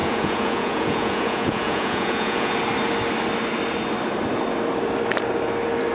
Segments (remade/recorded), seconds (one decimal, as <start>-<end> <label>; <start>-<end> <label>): 0.0-2.5 remade; 2.5-5.9 recorded